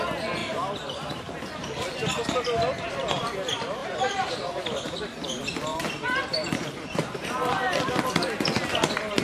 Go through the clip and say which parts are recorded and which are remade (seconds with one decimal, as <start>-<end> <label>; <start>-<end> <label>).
0.0-0.4 recorded; 0.4-1.2 remade; 1.2-3.8 recorded; 3.8-4.6 remade; 4.6-5.7 recorded; 5.7-7.3 remade; 7.3-9.2 recorded